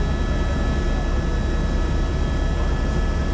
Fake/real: real